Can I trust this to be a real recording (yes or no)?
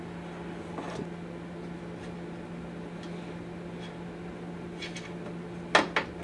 yes